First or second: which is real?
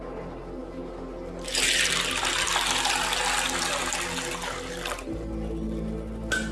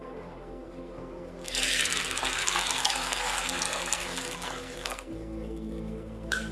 first